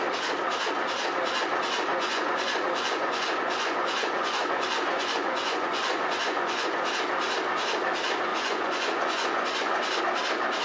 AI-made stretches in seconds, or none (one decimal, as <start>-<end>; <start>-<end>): 1.9-6.9; 8.3-10.0